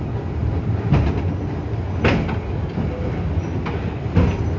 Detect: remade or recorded recorded